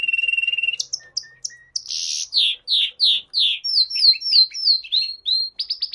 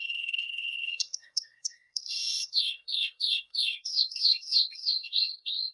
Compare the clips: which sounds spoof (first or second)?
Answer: second